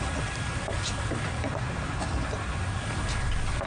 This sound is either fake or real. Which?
real